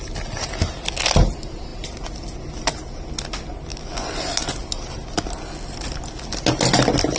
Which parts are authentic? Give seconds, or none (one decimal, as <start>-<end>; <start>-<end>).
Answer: 0.0-7.2